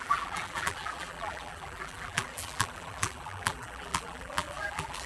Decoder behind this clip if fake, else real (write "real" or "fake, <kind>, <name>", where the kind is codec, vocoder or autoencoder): fake, vocoder, BigVGAN v2